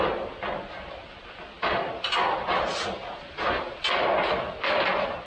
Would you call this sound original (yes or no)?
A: yes